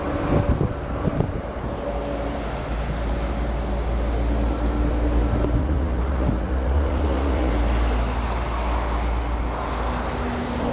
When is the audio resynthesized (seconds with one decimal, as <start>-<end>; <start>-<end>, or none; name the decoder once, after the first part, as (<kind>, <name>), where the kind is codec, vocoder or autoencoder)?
5.6-7.5 (vocoder, Vocos)